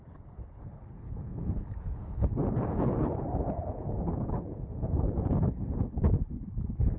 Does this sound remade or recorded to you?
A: remade